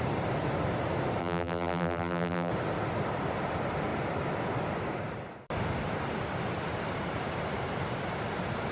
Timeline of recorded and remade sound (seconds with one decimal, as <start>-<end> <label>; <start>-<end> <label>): 0.0-1.2 recorded; 1.2-2.5 remade; 2.5-8.7 recorded